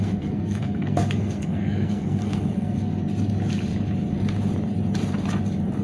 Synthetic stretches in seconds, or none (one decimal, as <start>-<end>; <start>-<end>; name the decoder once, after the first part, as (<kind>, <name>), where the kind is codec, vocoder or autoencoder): 0.0-2.9 (codec, SNAC)